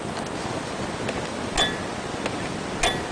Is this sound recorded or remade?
recorded